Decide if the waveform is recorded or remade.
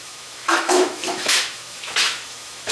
remade